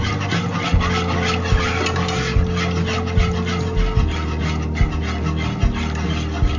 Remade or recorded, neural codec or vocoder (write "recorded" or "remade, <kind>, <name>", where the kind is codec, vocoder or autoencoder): recorded